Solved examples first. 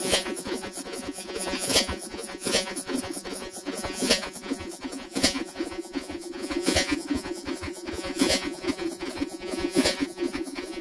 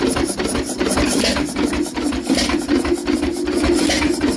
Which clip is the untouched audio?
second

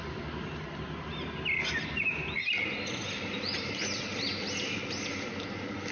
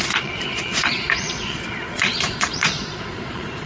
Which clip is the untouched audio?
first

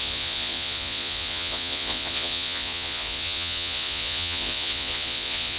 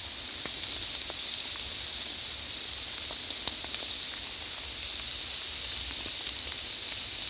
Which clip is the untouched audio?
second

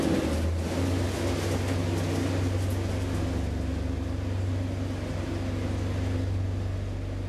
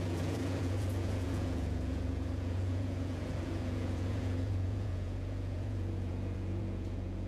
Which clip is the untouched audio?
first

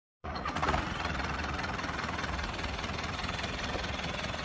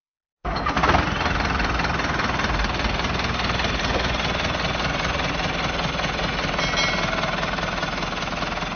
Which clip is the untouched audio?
second